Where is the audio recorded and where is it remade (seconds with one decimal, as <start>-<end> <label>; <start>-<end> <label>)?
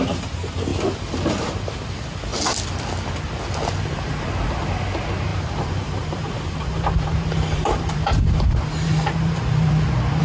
0.0-5.3 recorded; 5.3-10.2 remade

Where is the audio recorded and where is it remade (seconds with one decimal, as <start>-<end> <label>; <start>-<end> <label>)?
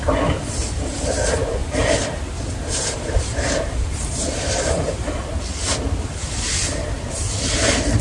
0.0-1.6 recorded; 1.6-5.2 remade; 5.2-8.0 recorded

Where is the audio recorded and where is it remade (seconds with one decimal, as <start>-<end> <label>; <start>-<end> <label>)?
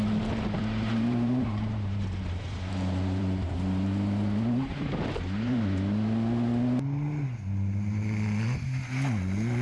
0.0-0.6 recorded; 0.6-5.6 remade; 5.6-9.6 recorded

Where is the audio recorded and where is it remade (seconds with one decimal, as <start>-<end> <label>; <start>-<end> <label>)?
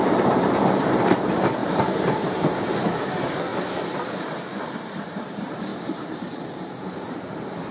0.0-3.5 remade; 3.5-4.1 recorded; 4.1-7.7 remade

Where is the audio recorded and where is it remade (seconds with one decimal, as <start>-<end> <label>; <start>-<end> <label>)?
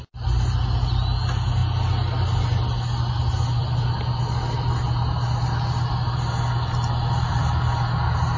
0.0-8.4 recorded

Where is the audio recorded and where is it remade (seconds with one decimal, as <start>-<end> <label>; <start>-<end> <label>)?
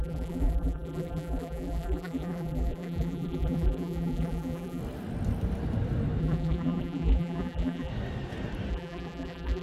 0.0-4.8 remade; 4.8-6.2 recorded; 6.2-7.9 remade; 7.9-8.7 recorded; 8.7-9.6 remade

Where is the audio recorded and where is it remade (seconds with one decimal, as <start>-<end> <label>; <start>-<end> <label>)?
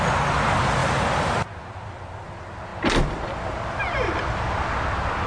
0.0-5.3 recorded